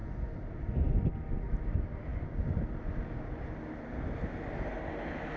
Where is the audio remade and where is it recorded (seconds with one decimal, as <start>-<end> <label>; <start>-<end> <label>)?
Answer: 0.0-5.4 recorded

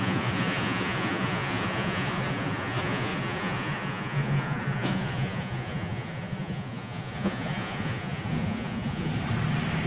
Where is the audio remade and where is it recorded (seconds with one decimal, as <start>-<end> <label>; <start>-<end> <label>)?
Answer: 0.0-9.1 remade; 9.1-9.9 recorded

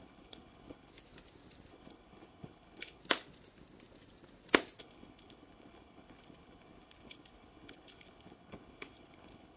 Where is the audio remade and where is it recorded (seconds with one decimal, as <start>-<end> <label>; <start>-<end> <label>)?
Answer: 0.0-0.9 remade; 0.9-1.7 recorded; 1.7-3.0 remade; 3.0-4.8 recorded; 4.8-9.6 remade

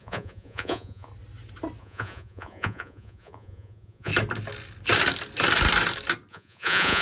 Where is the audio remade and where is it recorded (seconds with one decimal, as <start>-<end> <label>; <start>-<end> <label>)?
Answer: 0.0-1.1 remade; 1.1-1.8 recorded; 1.8-4.1 remade; 4.1-6.3 recorded; 6.3-7.0 remade

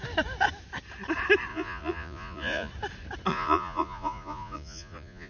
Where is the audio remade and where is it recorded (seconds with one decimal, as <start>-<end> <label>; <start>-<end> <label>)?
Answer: 0.0-1.5 recorded; 1.5-2.7 remade; 2.7-3.3 recorded; 3.3-5.3 remade

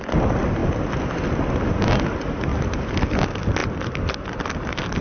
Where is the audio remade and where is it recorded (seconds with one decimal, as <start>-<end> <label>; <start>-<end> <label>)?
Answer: 0.0-2.5 recorded; 2.5-3.2 remade; 3.2-3.6 recorded; 3.6-5.0 remade

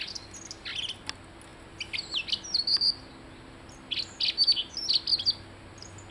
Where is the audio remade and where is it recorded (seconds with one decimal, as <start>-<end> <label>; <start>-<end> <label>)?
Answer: 0.0-6.1 recorded

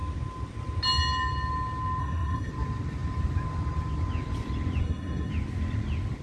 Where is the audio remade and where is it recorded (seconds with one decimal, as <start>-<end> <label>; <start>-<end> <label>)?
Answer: 0.0-2.0 recorded; 2.0-2.5 remade; 2.5-4.8 recorded; 4.8-5.3 remade; 5.3-6.2 recorded